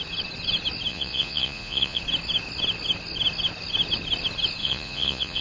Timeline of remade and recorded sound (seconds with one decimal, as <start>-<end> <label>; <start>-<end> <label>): 0.0-0.9 recorded; 0.9-2.0 remade; 2.0-4.6 recorded; 4.6-5.4 remade